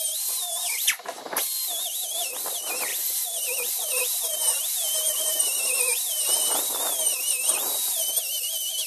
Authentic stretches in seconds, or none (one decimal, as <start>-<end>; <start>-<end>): none